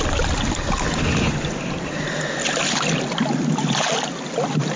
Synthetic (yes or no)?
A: no